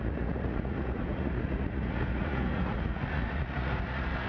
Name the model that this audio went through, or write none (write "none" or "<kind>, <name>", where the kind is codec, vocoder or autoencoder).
vocoder, Vocos